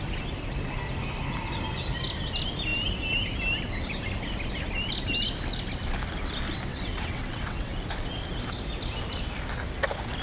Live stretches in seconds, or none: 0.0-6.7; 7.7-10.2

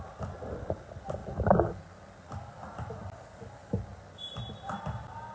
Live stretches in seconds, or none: 0.0-1.2; 4.4-5.3

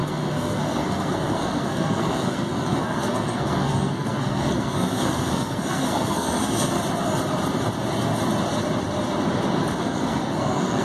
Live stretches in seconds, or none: 6.8-9.8

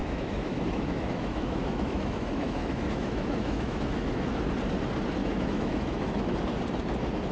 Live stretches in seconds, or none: 4.4-5.2; 6.3-7.3

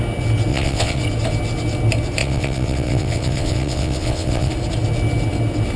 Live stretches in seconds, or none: 0.0-0.5; 1.0-2.2; 4.5-5.8